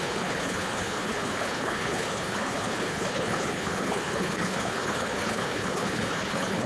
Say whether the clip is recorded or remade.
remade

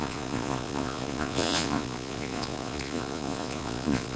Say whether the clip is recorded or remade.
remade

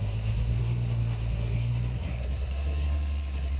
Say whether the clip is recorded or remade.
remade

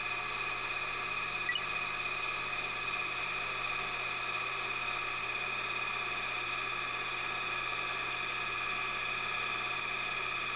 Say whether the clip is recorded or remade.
recorded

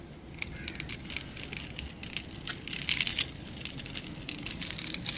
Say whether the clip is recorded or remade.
recorded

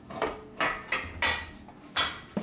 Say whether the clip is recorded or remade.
recorded